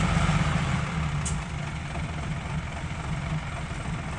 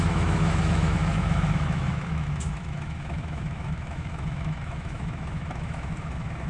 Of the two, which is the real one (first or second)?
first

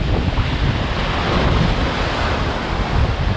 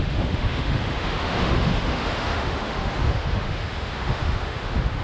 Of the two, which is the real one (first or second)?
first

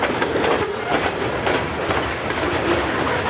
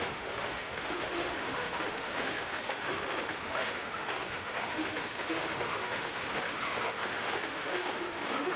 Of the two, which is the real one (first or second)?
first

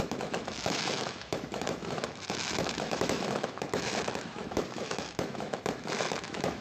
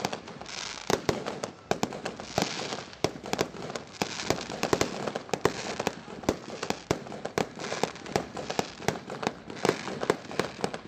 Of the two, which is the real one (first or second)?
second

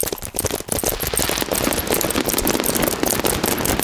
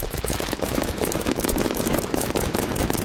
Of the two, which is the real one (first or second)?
first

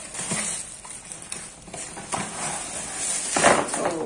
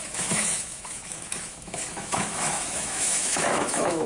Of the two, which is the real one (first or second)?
first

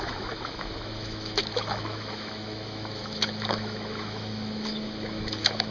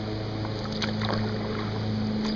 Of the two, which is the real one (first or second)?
second